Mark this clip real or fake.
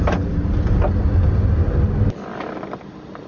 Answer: real